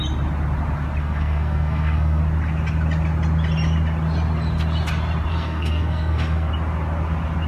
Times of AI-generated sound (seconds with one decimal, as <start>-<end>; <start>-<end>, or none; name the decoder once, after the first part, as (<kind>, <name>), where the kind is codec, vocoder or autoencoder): 1.0-2.2 (codec, SNAC); 5.3-6.5